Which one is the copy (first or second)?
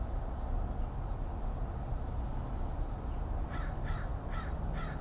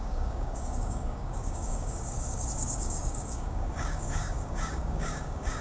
second